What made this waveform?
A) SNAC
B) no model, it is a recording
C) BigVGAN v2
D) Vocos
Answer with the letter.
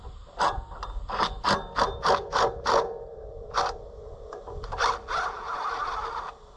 B